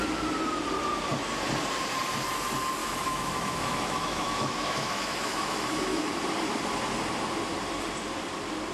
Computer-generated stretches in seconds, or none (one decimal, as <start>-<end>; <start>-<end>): 2.8-6.1

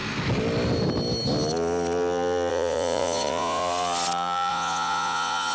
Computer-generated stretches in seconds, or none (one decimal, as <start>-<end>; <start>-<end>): 2.5-3.6; 4.5-5.5

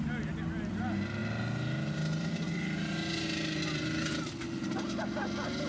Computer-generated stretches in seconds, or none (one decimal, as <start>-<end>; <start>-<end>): none

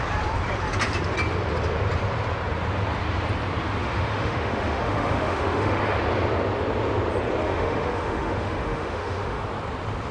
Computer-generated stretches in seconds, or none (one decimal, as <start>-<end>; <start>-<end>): 3.8-5.8; 7.4-9.4

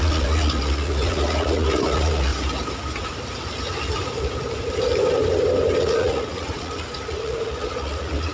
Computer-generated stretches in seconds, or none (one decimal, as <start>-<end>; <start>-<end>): 0.0-2.3; 5.8-8.3

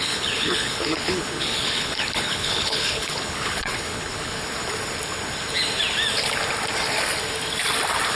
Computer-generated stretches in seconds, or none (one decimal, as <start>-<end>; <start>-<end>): 0.0-4.4